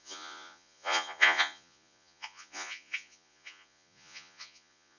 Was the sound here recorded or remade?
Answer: remade